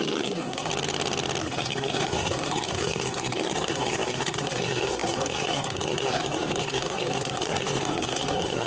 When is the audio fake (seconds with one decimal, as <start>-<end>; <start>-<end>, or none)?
0.0-0.7; 1.4-8.7